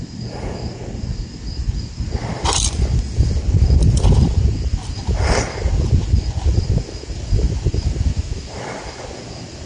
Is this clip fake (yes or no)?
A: yes